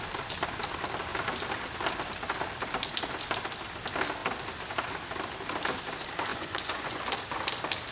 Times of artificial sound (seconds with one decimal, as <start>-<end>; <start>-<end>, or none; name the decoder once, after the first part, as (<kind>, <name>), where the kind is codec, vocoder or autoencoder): 6.3-7.0 (vocoder, Vocos)

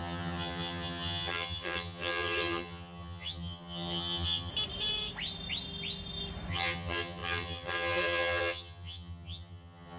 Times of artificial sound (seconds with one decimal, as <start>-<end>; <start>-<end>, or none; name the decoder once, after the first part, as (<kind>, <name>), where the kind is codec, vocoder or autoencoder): 0.0-4.5 (vocoder, HiFi-GAN); 6.5-10.0